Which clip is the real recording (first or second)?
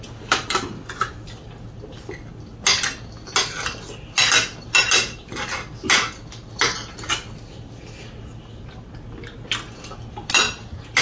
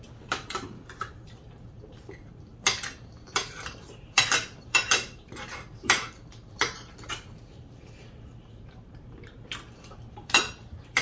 first